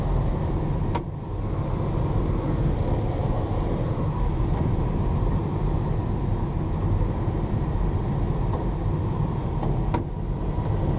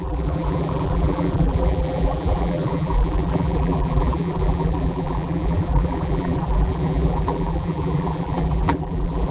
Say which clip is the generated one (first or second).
second